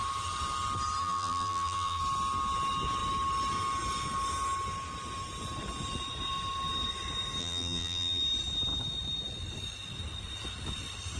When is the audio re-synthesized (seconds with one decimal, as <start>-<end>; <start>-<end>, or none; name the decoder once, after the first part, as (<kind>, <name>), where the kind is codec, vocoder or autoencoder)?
1.0-2.0 (vocoder, BigVGAN v2); 7.4-8.2